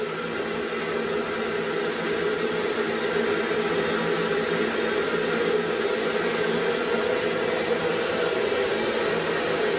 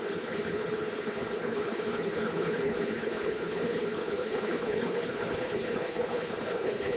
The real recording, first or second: first